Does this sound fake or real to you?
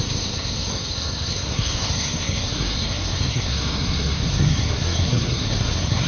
fake